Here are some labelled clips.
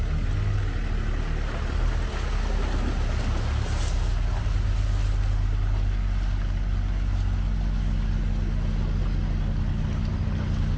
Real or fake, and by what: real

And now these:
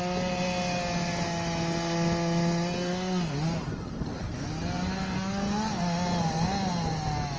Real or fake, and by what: real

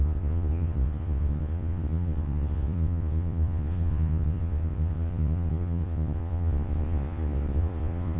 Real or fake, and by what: fake, vocoder, Vocos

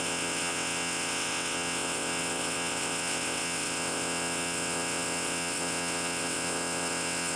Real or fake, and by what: fake, vocoder, WaveNeXt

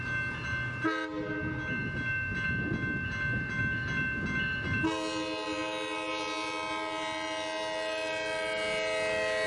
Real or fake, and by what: real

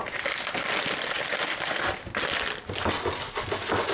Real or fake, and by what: real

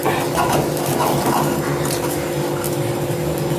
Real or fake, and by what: real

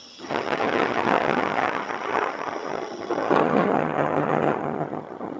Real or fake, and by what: fake, vocoder, HiFi-GAN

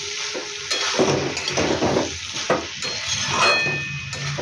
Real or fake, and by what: real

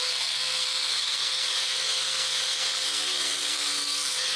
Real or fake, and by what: fake, codec, SNAC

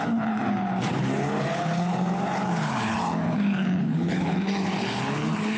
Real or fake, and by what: fake, codec, HILCodec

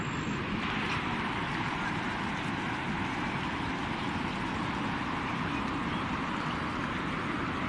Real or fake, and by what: real